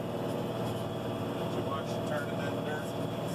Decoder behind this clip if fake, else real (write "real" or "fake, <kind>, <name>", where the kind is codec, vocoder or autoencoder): real